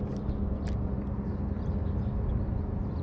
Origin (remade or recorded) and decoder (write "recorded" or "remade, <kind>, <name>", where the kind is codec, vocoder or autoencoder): recorded